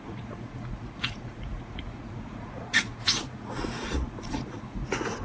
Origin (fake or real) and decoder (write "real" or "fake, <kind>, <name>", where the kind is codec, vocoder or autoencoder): fake, vocoder, Vocos